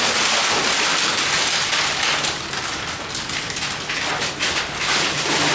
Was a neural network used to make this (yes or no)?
no